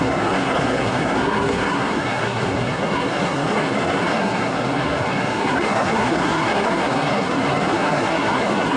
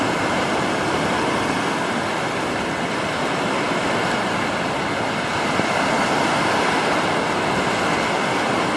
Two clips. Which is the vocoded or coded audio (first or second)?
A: first